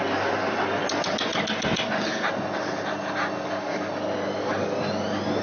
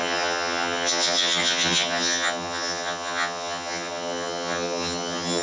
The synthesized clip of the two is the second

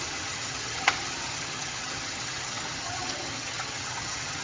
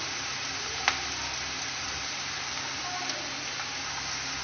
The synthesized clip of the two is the first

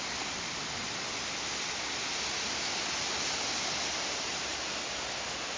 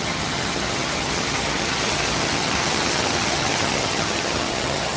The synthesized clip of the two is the second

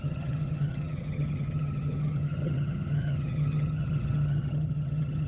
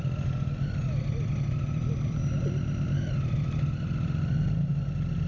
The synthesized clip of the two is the first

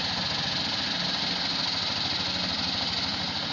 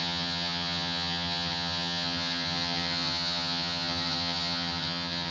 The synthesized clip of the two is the second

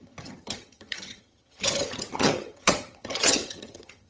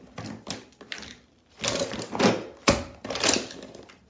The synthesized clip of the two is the first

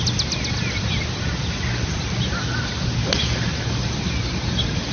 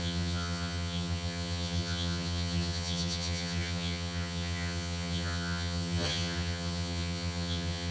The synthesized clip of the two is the second